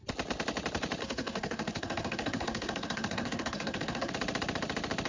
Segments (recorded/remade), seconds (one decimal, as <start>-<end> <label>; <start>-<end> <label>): 0.0-1.0 recorded; 1.0-4.1 remade; 4.1-5.1 recorded